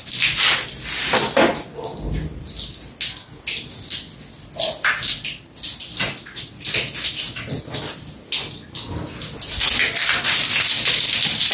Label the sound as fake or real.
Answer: real